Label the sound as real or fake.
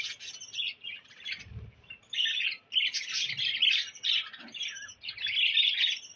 real